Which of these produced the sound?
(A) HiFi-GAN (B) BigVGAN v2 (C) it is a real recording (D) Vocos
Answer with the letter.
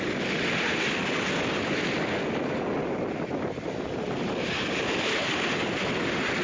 C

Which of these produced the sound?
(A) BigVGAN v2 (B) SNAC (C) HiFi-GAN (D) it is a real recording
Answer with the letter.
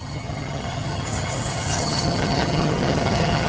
C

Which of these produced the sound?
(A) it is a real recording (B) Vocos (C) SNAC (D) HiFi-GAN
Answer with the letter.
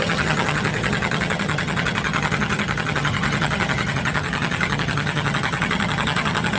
D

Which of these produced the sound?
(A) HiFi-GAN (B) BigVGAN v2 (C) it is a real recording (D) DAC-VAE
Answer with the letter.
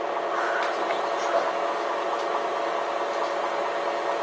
C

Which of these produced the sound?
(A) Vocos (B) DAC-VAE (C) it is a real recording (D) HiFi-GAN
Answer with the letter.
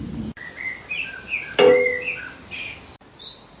C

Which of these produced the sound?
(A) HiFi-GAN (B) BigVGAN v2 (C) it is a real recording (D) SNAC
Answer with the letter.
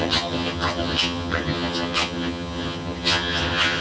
A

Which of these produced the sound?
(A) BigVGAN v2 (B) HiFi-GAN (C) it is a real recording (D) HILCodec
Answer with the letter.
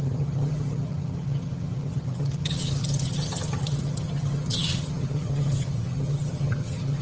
B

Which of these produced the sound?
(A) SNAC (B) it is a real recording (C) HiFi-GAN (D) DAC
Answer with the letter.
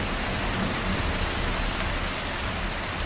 B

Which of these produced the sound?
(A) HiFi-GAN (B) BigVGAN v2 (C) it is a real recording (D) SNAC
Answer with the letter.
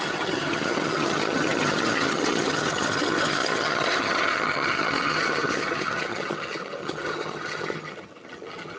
A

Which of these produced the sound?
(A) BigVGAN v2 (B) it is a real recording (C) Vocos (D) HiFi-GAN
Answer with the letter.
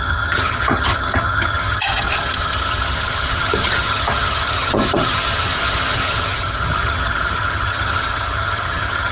D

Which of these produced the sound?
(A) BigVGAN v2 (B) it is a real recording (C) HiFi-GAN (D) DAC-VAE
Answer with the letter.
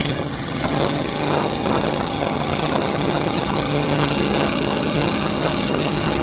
C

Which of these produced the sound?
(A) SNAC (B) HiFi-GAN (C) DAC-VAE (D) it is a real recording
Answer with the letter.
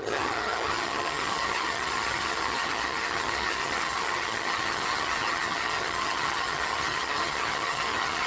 B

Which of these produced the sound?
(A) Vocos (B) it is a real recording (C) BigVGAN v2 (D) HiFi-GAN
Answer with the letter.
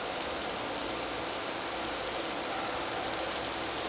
B